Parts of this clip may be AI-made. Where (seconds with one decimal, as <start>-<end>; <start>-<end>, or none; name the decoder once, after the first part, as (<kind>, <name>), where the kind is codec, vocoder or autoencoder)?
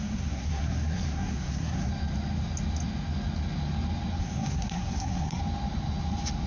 0.0-1.9 (codec, SNAC); 4.2-5.4